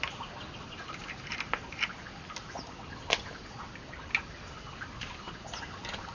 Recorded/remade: recorded